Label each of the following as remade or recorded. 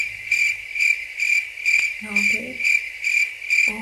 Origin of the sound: recorded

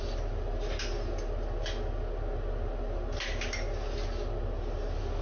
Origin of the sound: recorded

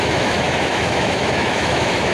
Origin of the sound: remade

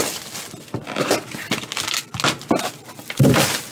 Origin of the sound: recorded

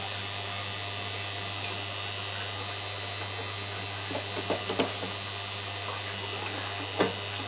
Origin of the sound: recorded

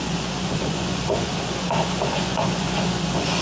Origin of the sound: remade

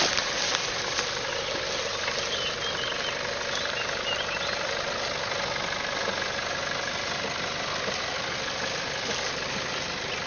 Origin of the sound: recorded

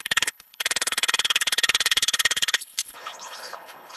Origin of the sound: remade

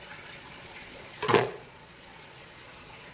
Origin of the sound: remade